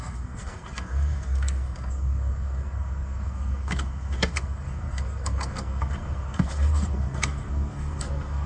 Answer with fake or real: fake